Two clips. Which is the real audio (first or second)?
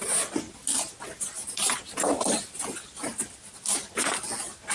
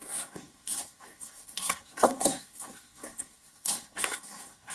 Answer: first